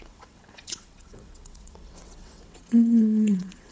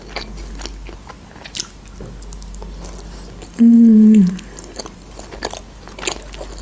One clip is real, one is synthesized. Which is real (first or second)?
second